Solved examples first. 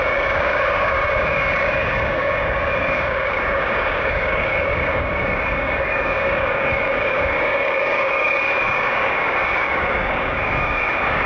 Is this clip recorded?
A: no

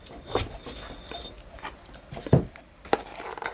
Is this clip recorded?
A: yes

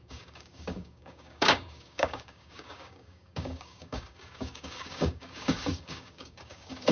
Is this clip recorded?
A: no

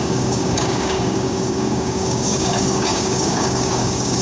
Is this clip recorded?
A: no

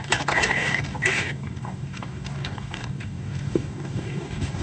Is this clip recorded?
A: no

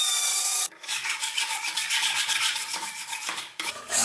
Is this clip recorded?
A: no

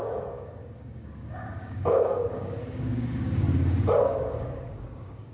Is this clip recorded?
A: no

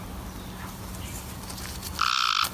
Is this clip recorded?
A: yes